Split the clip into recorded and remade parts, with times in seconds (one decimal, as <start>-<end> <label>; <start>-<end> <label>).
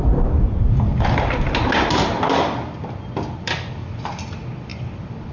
0.0-0.9 recorded; 0.9-4.1 remade; 4.1-4.7 recorded; 4.7-5.3 remade